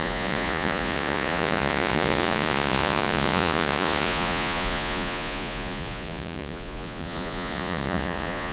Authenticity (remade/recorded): remade